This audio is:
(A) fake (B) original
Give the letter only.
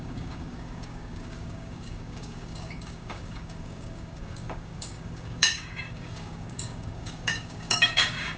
A